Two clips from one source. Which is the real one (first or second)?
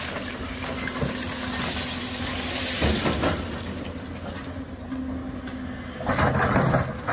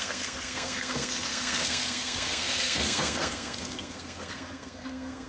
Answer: first